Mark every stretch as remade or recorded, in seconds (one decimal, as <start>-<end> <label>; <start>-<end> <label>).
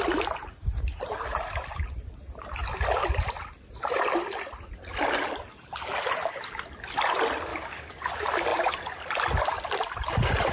0.0-7.5 recorded; 7.5-8.1 remade; 8.1-10.5 recorded